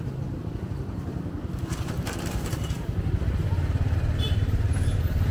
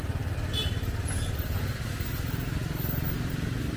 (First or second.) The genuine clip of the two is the second